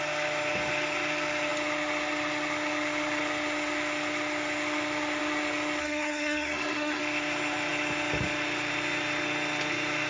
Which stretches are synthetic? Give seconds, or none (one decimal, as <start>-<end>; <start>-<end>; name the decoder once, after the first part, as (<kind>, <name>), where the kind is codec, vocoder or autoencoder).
5.8-7.0 (codec, SNAC)